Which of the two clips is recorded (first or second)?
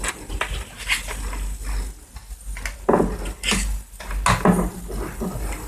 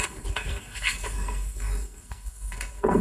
first